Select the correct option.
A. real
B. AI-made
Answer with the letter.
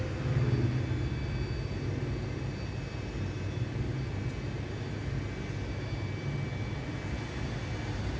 A